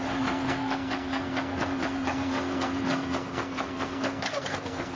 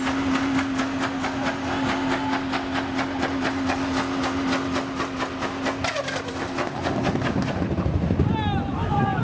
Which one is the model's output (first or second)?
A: first